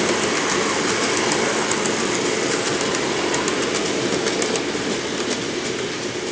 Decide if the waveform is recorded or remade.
recorded